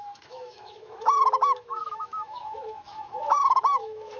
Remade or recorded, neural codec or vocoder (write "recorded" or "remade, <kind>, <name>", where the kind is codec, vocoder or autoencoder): remade, autoencoder, DAC-VAE